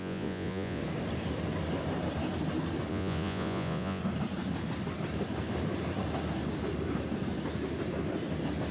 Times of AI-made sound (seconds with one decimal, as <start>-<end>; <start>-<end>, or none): 0.0-0.8; 2.9-4.0